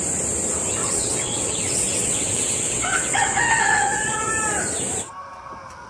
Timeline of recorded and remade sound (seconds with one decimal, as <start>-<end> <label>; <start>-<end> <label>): 0.0-0.8 recorded; 0.8-4.3 remade; 4.3-5.9 recorded